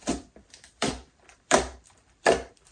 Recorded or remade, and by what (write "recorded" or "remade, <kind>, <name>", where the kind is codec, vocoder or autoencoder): remade, vocoder, BigVGAN v2